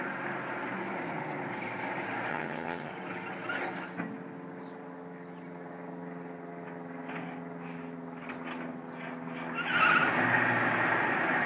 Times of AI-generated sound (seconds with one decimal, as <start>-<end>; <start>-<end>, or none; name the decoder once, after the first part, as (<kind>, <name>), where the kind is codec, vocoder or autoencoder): 2.3-2.9 (vocoder, HiFi-GAN)